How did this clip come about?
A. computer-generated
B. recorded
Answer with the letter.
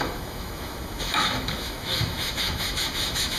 A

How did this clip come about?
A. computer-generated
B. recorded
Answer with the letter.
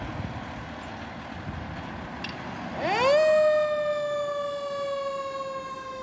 B